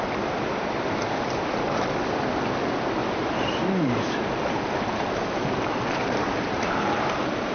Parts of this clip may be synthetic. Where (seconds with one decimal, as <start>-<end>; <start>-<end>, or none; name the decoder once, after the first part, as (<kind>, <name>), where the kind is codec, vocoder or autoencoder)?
3.0-7.5 (vocoder, BigVGAN v2)